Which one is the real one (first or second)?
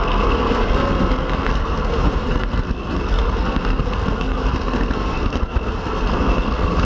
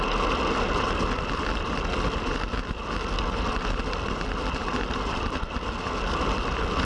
second